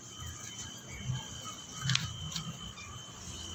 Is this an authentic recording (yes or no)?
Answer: yes